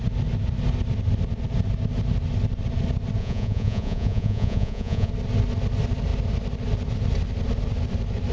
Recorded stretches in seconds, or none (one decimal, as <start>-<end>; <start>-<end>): 0.0-3.2; 5.1-8.3

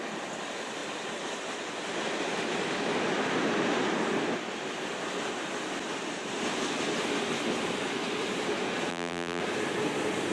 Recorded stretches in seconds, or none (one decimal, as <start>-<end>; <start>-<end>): 0.0-8.9; 9.4-10.3

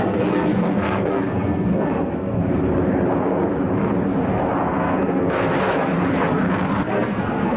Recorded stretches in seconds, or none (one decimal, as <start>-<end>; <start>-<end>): 2.4-4.6; 5.9-6.9